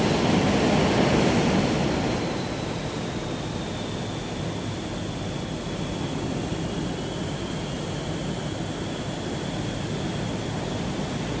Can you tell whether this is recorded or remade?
recorded